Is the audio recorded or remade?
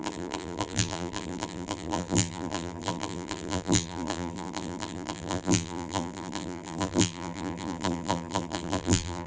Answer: remade